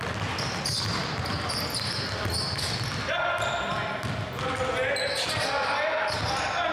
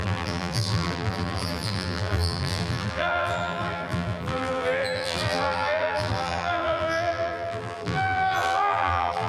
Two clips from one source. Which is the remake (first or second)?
second